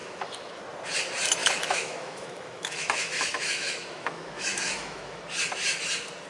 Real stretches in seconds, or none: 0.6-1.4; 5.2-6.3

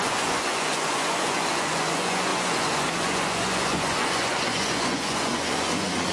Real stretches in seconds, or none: none

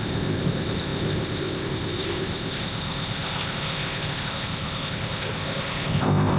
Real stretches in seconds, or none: none

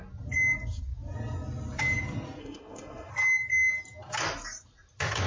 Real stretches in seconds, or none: 0.0-2.4; 3.1-5.3

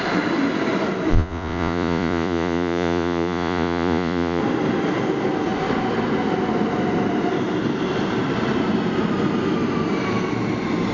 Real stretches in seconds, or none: 0.0-1.1; 4.4-10.9